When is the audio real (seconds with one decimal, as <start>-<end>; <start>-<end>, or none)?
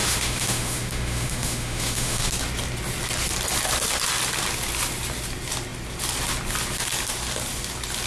2.3-8.1